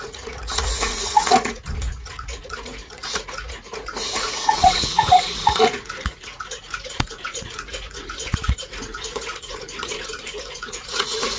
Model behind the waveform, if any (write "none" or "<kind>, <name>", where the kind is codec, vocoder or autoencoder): vocoder, Vocos